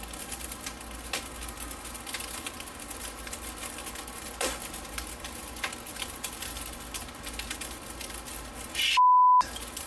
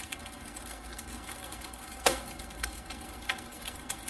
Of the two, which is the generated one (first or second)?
second